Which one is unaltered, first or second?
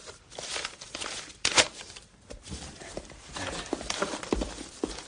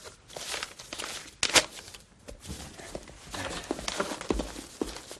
second